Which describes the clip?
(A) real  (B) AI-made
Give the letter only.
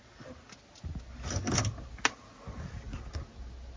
A